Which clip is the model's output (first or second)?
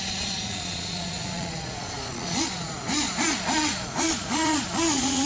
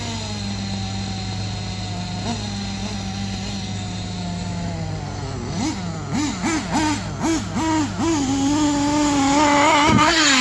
first